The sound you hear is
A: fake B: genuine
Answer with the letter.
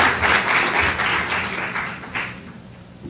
B